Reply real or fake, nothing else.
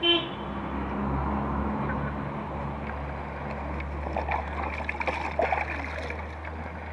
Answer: real